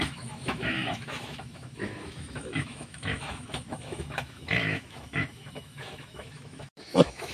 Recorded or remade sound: remade